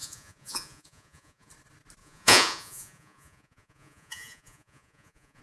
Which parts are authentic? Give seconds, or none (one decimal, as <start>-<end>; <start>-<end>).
1.5-2.0